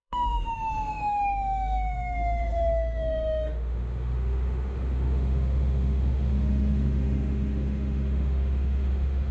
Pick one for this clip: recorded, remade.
remade